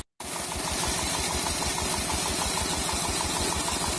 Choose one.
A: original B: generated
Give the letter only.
A